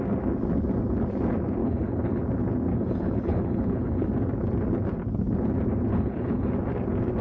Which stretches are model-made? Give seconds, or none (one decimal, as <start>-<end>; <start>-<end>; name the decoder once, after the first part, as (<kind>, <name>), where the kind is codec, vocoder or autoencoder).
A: 1.6-2.2 (codec, HILCodec); 2.7-4.1; 5.9-6.5